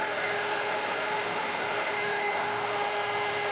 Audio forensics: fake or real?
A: fake